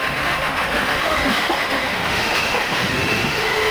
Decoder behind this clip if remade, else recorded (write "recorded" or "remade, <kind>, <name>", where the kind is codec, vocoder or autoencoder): remade, autoencoder, DAC-VAE